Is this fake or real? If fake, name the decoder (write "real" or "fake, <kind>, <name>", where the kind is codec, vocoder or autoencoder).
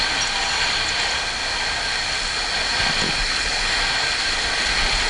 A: real